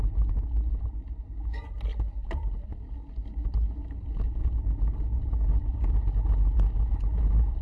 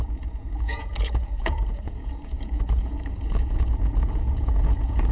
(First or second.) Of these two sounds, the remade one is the second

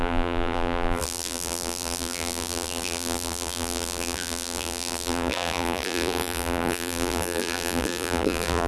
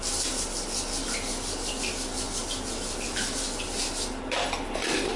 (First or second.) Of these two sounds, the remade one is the first